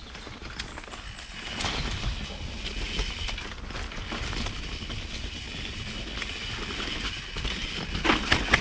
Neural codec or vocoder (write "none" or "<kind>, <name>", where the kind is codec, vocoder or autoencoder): none